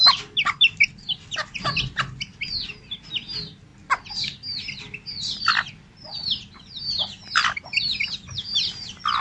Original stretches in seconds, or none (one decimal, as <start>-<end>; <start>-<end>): 0.0-9.2